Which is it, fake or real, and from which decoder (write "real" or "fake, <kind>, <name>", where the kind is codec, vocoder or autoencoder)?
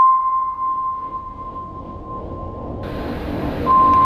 real